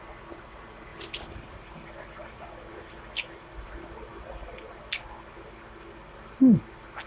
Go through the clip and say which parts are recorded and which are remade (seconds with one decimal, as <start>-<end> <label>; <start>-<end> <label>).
0.0-4.1 recorded; 4.1-4.6 remade; 4.6-7.1 recorded